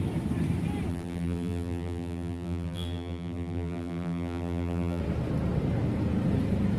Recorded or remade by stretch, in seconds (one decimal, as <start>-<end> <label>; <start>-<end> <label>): 0.0-0.9 recorded; 0.9-5.0 remade; 5.0-6.8 recorded